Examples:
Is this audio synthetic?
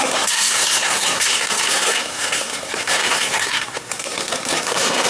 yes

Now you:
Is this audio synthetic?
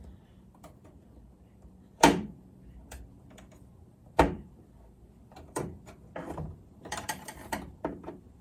yes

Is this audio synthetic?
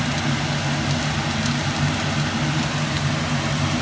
no